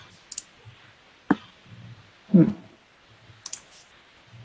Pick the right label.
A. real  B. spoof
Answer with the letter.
A